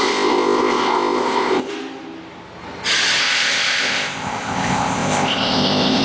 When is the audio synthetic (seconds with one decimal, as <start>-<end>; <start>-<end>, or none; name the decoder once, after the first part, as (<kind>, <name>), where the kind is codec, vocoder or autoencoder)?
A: 0.0-1.7 (codec, ZipCodec); 3.2-6.0